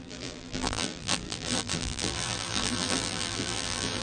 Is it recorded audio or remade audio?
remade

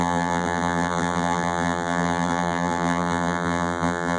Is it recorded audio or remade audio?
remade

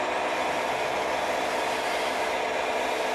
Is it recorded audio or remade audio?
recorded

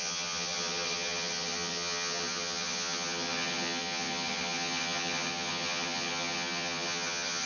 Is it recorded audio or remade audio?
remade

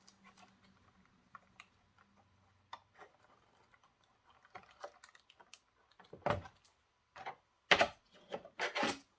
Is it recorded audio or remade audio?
recorded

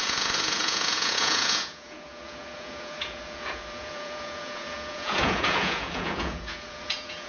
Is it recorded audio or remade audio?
remade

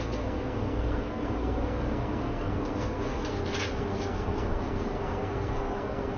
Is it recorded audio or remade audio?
remade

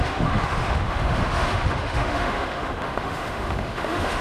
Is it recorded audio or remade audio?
remade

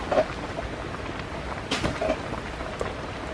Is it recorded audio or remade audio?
recorded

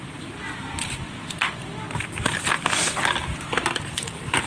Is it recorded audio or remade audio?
remade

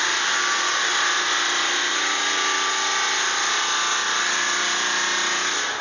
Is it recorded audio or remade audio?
recorded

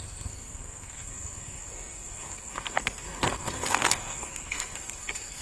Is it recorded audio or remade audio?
remade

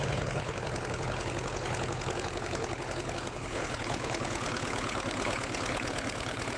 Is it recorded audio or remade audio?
remade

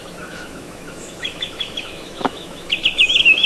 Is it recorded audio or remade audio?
remade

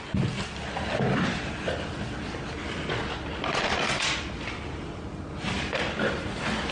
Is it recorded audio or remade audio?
recorded